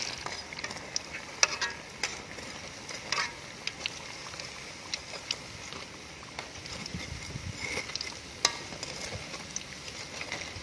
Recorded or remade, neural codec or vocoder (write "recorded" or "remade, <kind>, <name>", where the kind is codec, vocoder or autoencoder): recorded